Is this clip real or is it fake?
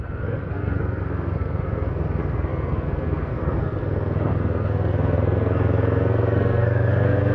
fake